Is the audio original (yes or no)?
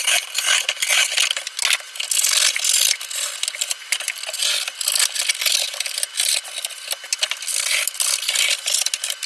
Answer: yes